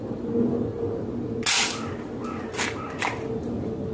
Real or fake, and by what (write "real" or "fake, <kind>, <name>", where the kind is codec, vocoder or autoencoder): real